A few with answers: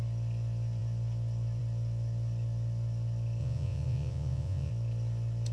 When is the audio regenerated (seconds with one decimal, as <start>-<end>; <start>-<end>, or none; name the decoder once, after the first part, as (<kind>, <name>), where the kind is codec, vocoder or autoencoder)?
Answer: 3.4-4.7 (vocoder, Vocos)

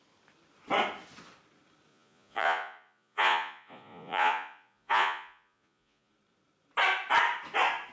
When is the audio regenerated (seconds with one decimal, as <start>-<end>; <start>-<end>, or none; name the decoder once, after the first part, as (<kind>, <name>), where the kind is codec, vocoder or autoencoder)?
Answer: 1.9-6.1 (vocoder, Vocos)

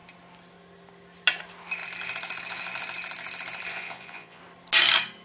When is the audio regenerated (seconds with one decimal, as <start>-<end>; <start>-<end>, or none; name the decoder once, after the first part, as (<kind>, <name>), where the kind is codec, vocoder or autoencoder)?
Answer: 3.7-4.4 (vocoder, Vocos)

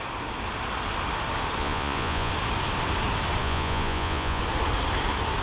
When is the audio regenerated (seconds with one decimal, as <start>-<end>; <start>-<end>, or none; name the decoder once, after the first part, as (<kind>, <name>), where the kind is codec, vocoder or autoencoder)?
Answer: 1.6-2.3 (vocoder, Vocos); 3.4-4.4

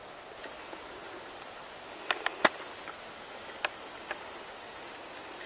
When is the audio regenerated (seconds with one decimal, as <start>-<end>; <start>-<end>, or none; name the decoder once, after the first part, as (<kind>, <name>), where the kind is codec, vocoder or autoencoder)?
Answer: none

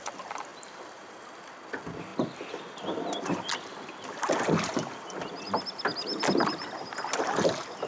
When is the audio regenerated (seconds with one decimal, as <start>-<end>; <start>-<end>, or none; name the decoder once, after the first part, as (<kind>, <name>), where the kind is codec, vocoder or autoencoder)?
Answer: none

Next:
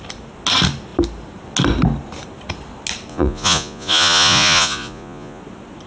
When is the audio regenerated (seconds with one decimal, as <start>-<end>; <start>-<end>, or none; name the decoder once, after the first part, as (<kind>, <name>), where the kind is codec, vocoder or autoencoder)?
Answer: 3.1-5.4 (vocoder, Vocos)